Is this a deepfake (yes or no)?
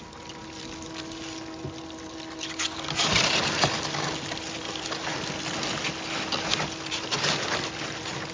no